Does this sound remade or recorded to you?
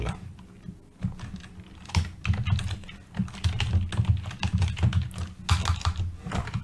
recorded